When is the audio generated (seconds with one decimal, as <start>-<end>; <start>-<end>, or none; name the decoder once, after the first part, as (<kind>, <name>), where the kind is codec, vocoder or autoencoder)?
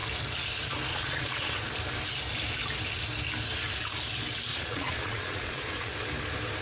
0.9-1.5 (vocoder, Vocos); 4.5-5.9